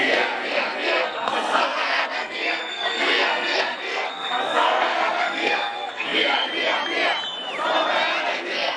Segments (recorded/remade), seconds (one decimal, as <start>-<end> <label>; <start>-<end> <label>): 0.0-6.5 remade; 6.5-8.2 recorded; 8.2-8.8 remade